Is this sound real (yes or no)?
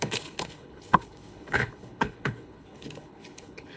no